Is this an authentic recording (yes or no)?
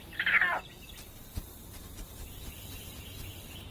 yes